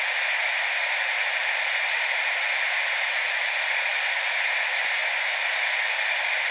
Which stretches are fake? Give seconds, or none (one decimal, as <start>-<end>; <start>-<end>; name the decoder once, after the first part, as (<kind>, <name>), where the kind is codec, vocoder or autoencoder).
0.5-3.9 (vocoder, BigVGAN v2); 5.0-6.5